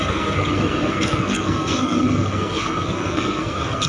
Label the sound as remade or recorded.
remade